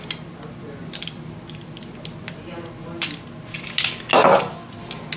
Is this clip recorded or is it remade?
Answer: recorded